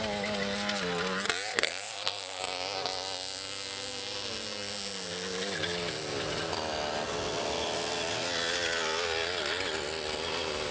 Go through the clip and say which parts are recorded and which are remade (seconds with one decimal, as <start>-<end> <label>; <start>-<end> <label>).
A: 0.0-1.5 recorded; 1.5-2.4 remade; 2.4-10.7 recorded